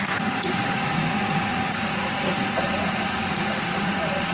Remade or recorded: remade